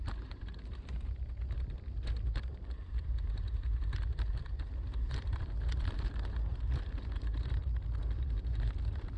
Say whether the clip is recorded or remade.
remade